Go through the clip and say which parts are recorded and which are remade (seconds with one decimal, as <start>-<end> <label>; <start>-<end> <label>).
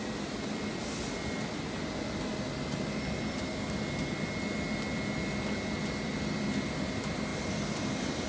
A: 0.0-8.3 recorded